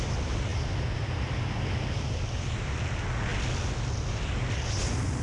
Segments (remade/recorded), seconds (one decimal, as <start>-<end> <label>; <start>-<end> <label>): 0.0-5.2 recorded